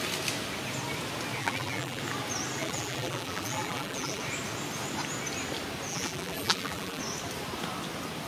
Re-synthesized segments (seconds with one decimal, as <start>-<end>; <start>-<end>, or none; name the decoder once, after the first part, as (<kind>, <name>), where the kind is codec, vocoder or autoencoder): 1.4-2.0 (vocoder, BigVGAN v2); 2.6-4.2; 5.9-7.0